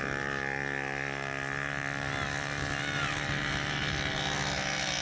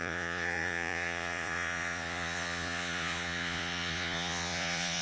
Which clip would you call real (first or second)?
first